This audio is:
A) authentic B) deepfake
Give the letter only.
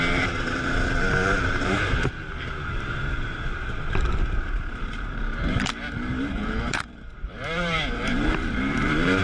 B